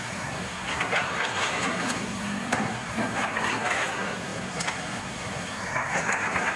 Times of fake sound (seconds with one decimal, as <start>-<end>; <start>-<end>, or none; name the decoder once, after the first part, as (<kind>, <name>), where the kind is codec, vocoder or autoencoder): 0.0-6.6 (codec, SNAC)